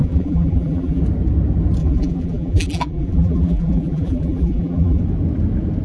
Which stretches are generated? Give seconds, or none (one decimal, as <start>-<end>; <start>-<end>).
0.0-1.0; 1.8-5.0